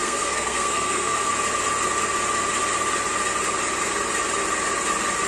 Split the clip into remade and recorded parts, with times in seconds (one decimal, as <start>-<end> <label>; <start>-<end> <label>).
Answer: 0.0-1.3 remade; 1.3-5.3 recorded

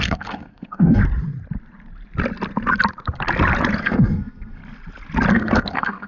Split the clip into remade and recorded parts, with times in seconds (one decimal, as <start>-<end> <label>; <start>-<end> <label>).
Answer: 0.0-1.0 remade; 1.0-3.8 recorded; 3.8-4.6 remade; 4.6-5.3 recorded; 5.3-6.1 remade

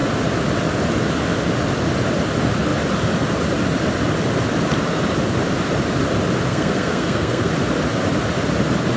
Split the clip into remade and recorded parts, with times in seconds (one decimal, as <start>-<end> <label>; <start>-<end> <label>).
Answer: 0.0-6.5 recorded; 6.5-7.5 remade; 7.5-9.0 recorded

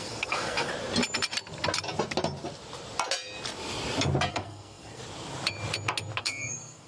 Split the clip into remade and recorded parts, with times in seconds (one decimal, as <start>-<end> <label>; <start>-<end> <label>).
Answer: 0.0-0.7 remade; 0.7-4.3 recorded; 4.3-5.0 remade; 5.0-6.2 recorded; 6.2-6.9 remade

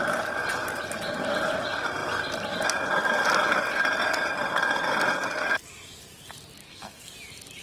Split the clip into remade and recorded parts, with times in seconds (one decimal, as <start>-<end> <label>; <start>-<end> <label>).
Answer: 0.0-6.6 recorded; 6.6-7.1 remade; 7.1-7.6 recorded